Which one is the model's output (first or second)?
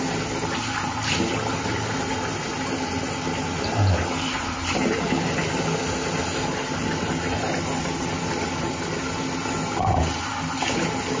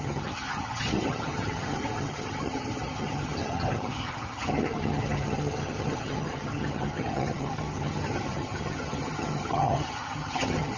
second